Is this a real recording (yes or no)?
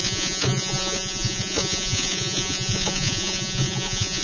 no